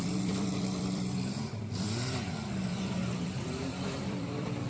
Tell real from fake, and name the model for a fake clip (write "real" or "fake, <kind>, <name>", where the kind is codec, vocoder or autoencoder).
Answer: fake, vocoder, BigVGAN v2